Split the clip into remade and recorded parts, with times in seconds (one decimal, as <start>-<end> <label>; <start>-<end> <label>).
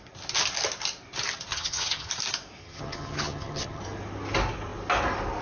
0.0-1.5 recorded; 1.5-2.1 remade; 2.1-2.6 recorded; 2.6-3.8 remade; 3.8-5.4 recorded